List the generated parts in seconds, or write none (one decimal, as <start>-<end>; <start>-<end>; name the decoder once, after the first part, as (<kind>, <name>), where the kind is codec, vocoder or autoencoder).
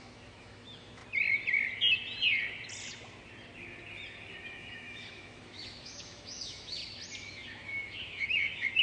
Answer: 0.0-1.0 (autoencoder, DAC-VAE); 4.4-6.8; 7.3-8.8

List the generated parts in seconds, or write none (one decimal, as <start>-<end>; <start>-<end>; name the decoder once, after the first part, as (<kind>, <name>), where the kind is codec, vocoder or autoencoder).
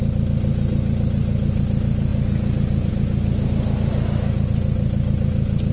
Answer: none